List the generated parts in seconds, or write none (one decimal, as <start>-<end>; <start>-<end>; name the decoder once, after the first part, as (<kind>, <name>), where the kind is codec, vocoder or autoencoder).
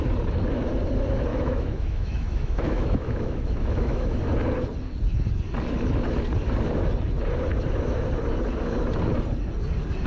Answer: 1.3-4.2 (autoencoder, DAC-VAE)